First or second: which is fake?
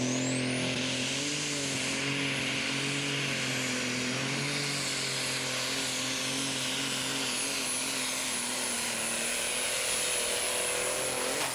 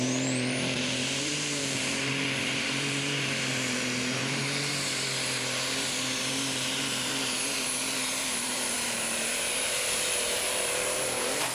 second